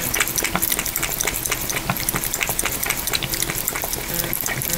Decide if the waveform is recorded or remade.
recorded